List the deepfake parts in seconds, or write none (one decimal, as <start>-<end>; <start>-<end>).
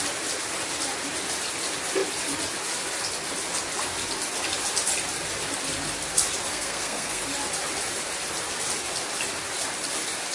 6.5-7.2